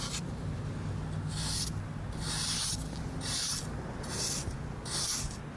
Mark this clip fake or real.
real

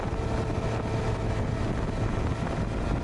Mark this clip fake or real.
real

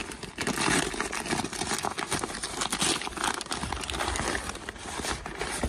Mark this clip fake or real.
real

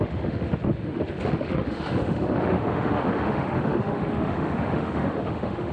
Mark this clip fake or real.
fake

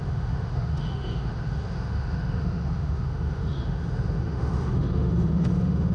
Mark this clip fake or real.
fake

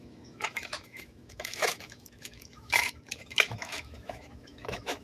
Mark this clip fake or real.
fake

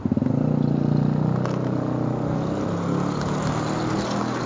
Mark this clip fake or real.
real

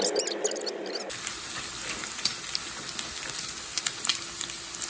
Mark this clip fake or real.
real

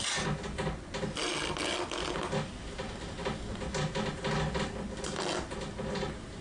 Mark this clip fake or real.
real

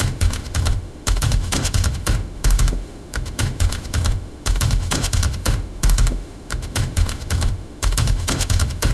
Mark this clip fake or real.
fake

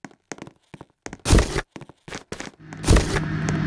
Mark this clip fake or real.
real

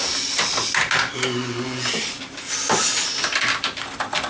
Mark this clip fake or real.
real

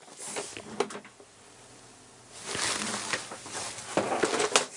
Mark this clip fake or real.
real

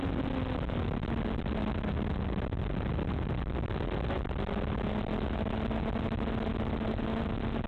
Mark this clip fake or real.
real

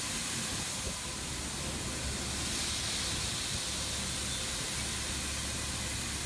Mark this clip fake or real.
real